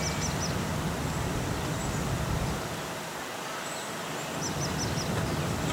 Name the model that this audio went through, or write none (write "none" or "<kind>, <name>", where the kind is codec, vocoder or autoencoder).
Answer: none